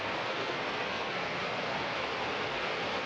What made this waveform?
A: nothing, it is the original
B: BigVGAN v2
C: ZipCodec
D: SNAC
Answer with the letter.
D